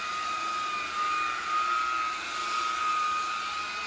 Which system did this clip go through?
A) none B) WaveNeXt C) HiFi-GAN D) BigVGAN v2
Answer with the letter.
A